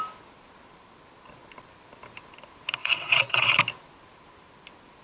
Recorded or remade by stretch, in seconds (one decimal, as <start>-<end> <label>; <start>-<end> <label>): 0.0-2.8 recorded; 2.8-3.6 remade; 3.6-5.0 recorded